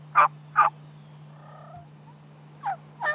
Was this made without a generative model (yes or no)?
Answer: yes